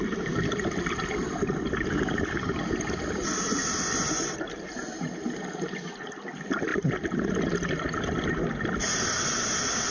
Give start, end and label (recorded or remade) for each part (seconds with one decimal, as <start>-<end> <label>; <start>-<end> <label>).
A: 0.0-9.9 recorded